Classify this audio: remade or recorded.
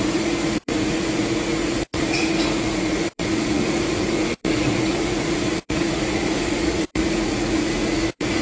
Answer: remade